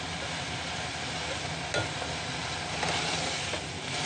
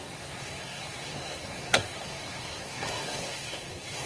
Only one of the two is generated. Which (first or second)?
second